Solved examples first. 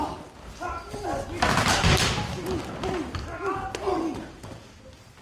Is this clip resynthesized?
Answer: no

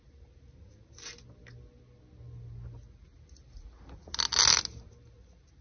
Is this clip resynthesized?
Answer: no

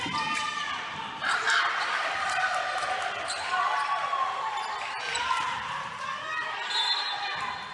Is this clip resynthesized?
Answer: no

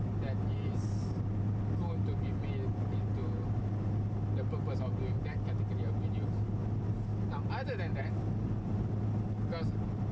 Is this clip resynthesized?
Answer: no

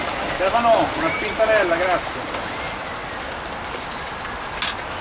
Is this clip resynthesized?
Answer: no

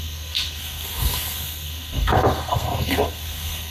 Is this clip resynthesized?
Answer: yes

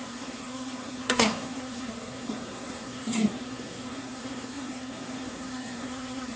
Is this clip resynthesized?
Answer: yes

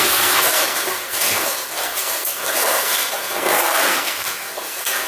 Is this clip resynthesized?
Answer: yes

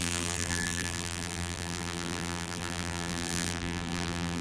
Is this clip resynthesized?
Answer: yes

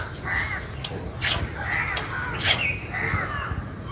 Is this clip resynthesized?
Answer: no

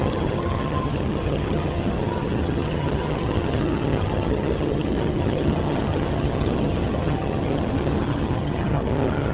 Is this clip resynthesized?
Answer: yes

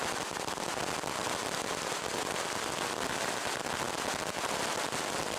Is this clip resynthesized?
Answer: no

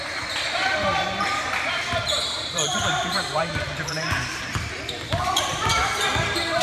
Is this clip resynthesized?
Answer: yes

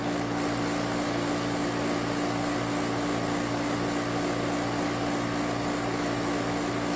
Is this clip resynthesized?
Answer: no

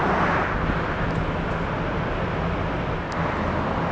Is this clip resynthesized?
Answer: no